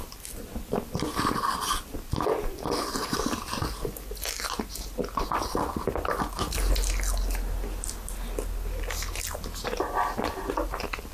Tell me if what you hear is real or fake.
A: real